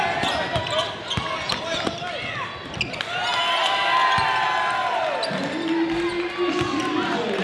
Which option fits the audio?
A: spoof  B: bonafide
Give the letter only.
B